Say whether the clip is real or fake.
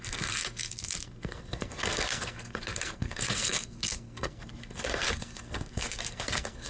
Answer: fake